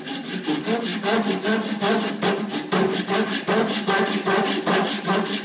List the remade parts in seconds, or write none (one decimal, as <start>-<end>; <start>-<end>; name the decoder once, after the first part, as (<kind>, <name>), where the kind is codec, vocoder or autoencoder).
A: none